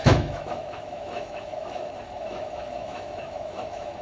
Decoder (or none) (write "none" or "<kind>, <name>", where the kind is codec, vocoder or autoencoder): autoencoder, DAC-VAE